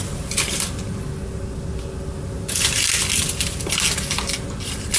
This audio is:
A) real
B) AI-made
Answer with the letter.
A